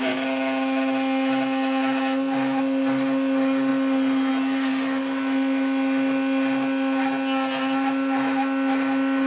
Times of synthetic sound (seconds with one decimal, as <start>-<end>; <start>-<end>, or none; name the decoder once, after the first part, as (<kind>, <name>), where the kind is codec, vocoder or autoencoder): none